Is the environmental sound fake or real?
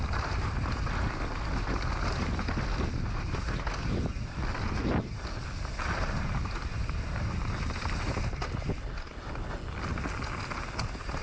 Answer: real